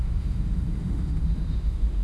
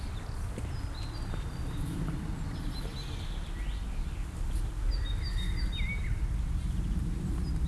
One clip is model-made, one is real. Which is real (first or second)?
second